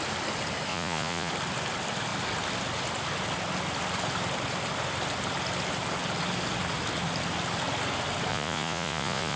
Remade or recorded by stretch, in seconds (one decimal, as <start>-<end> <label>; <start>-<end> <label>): 0.0-0.7 recorded; 0.7-1.3 remade; 1.3-8.3 recorded; 8.3-9.4 remade